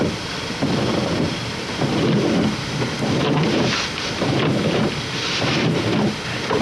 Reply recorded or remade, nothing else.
recorded